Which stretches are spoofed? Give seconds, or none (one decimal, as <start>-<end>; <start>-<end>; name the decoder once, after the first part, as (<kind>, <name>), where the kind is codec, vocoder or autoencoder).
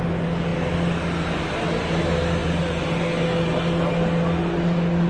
none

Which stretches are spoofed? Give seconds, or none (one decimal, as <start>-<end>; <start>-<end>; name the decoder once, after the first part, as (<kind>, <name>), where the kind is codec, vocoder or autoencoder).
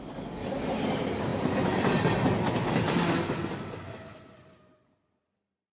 none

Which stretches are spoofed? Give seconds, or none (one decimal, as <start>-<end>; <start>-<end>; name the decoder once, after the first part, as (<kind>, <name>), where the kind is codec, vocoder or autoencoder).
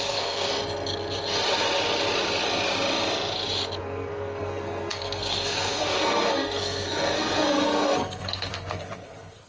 0.0-0.5 (codec, SNAC); 3.8-9.5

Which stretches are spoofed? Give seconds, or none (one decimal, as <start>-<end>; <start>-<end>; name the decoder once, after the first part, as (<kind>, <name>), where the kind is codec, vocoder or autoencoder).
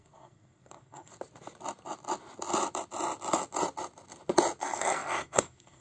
0.0-1.1 (codec, SNAC); 4.6-5.8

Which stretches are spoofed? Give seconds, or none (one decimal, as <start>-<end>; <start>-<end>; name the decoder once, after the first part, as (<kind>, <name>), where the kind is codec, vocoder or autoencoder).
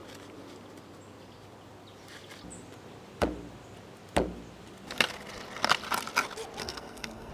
6.6-7.3 (codec, SNAC)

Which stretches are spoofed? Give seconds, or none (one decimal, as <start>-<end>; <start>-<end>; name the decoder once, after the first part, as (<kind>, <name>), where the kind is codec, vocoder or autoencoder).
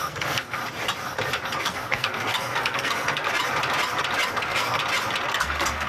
0.0-0.6 (codec, SNAC); 1.6-3.3; 4.3-4.8; 5.3-5.9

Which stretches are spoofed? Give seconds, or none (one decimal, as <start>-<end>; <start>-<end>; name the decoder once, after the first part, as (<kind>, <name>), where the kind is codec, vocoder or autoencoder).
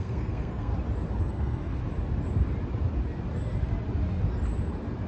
0.0-0.7 (codec, SNAC); 1.2-1.8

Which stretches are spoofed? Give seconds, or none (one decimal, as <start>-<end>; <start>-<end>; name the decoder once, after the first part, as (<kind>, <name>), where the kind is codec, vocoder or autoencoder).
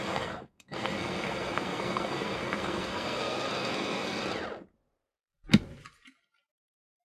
0.0-4.2 (codec, SNAC)